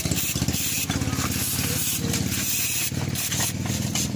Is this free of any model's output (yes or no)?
yes